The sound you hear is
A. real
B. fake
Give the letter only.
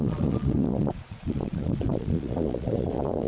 B